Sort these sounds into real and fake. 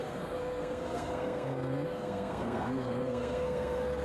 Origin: fake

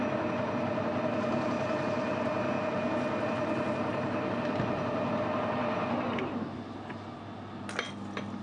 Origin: real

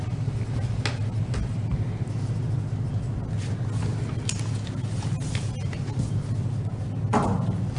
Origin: real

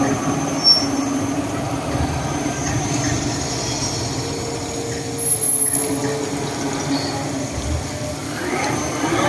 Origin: real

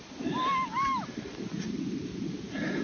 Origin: real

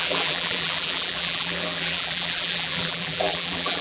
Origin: fake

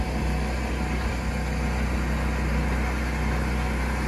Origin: real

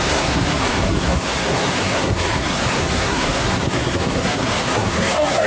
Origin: fake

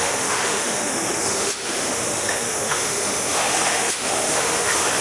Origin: fake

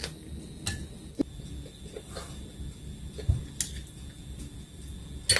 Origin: real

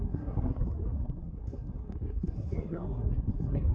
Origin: fake